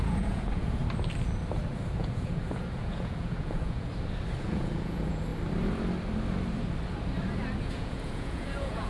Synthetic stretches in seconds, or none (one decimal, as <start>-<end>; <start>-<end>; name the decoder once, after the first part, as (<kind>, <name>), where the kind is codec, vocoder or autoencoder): 0.0-0.8 (vocoder, Vocos); 2.0-3.9; 4.4-5.3; 7.7-8.9